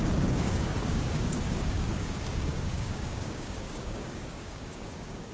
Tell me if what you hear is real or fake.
fake